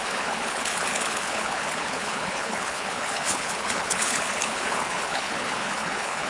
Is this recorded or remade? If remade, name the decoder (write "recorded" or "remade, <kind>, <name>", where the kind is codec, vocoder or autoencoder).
remade, codec, HILCodec